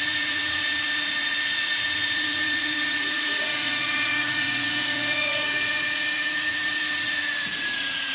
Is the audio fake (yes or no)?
yes